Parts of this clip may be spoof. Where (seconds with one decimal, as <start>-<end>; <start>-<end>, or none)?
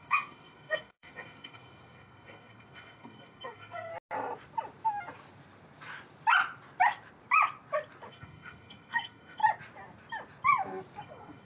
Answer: 0.0-3.9; 8.1-9.4; 11.0-11.5